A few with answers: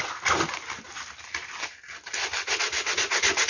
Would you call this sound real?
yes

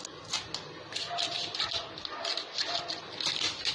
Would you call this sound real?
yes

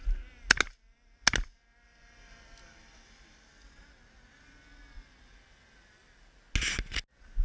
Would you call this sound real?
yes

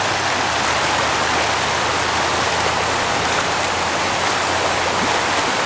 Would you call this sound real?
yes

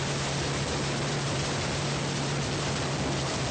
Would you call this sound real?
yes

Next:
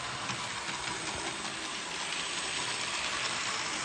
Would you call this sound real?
yes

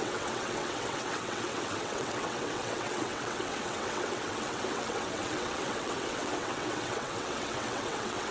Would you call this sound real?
no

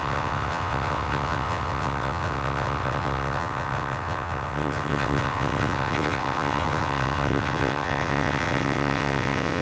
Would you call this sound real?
no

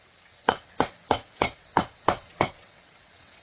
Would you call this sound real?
no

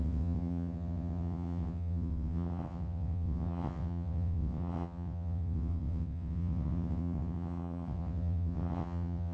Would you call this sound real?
no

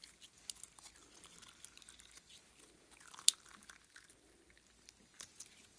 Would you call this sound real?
yes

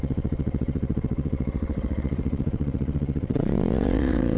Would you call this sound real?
no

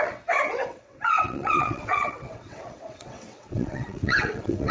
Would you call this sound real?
no